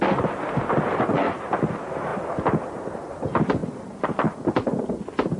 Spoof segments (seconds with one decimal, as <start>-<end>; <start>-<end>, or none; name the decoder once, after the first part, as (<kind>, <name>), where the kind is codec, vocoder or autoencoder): none